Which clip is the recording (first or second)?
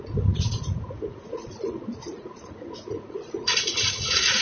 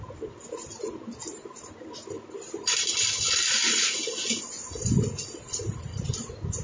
second